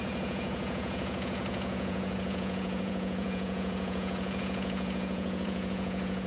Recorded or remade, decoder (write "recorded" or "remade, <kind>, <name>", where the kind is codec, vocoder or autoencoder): remade, vocoder, Vocos